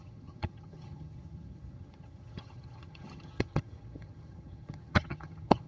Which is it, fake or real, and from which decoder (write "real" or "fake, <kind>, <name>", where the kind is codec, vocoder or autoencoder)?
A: fake, vocoder, HiFi-GAN